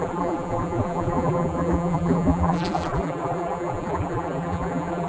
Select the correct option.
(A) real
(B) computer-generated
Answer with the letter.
B